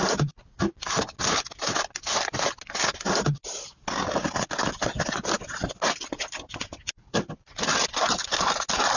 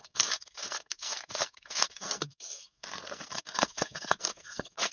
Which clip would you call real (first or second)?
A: first